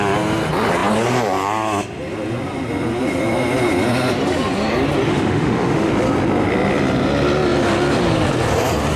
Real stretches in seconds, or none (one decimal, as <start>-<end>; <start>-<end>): 0.0-5.1; 5.9-9.0